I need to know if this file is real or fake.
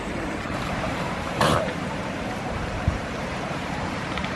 fake